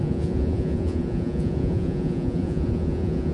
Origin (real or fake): fake